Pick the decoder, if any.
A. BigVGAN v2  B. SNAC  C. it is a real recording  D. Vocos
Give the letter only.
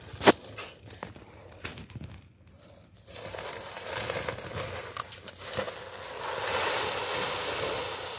C